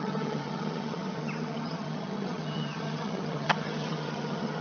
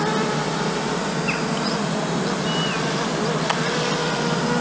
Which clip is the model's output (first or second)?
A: first